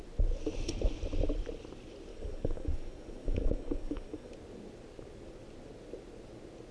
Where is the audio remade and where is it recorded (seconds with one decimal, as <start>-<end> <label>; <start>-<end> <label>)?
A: 0.0-2.1 recorded; 2.1-4.3 remade; 4.3-6.7 recorded